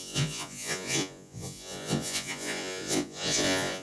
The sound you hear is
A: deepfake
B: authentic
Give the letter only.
A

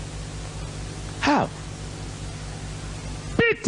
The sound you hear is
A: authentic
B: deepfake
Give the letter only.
A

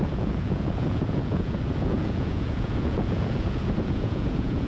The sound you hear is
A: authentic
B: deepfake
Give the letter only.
B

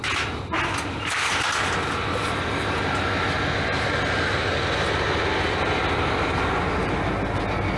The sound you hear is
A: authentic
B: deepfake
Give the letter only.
A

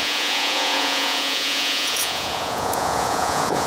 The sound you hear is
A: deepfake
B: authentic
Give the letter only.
A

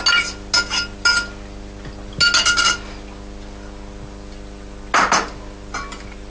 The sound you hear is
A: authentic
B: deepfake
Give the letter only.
A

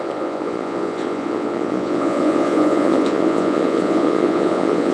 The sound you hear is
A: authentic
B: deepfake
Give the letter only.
B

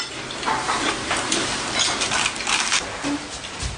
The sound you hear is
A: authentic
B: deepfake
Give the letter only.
A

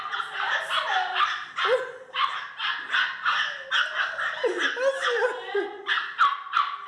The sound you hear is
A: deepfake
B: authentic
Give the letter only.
B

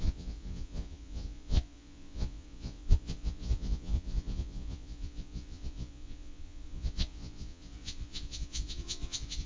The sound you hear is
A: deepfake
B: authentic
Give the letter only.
A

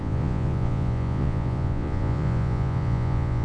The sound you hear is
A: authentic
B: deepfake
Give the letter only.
B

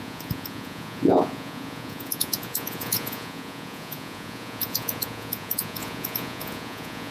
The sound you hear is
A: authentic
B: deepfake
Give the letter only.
B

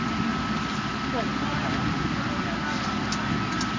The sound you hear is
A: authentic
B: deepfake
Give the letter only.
A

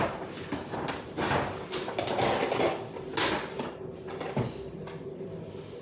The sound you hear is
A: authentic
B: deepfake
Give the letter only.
A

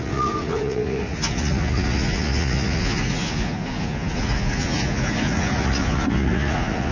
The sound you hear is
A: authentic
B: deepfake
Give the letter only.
B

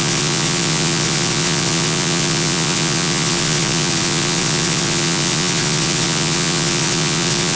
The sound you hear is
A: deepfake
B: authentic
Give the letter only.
A